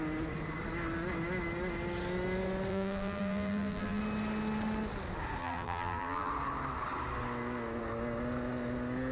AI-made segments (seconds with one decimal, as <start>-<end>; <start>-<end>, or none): 2.7-4.0; 5.4-6.3